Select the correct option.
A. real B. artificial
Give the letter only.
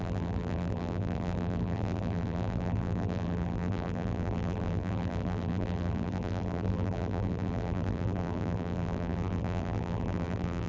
B